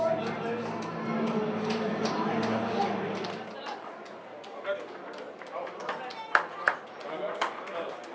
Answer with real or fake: real